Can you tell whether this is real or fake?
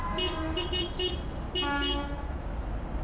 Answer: real